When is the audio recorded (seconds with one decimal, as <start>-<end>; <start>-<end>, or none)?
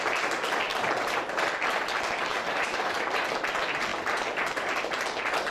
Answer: 0.0-0.7; 1.4-2.3; 2.9-5.5